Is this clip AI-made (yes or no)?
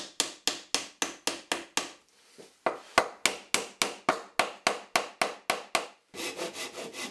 no